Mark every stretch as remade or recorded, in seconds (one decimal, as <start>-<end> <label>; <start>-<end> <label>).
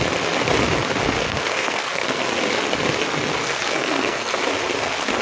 0.0-1.2 recorded; 1.2-2.2 remade; 2.2-3.4 recorded; 3.4-4.4 remade; 4.4-5.2 recorded